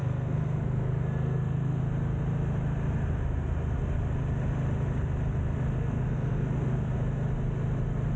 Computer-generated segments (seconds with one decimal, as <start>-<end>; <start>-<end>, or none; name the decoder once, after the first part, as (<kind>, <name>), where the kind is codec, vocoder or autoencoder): 0.0-1.8 (codec, SNAC); 5.8-6.9